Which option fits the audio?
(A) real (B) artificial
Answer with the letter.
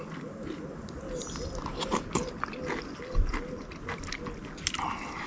A